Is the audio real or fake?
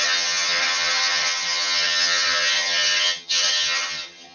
fake